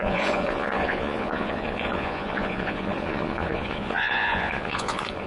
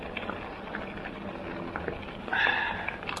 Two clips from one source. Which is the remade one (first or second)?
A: first